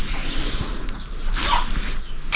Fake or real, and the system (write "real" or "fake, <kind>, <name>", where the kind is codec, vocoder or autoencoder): real